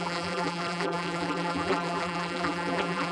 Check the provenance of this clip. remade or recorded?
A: remade